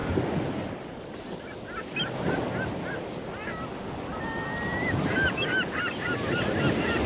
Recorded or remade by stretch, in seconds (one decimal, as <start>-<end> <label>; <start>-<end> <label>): 0.0-7.1 remade